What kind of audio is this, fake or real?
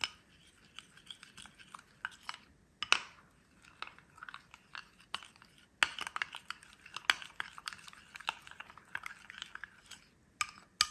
real